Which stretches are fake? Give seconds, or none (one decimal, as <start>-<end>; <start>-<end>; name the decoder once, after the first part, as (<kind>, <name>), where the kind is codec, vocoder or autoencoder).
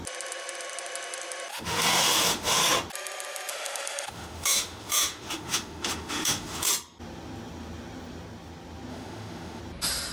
1.5-2.6 (autoencoder, DAC-VAE); 3.5-6.7; 8.9-9.6